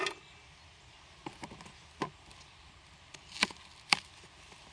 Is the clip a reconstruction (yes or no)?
no